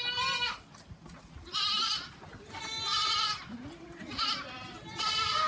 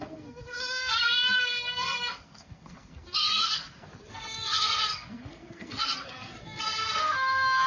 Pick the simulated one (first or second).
second